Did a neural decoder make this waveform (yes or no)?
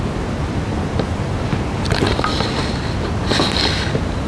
yes